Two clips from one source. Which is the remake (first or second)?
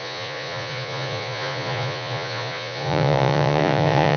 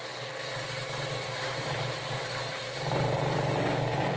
first